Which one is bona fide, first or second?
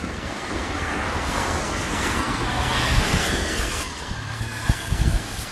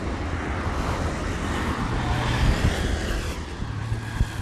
second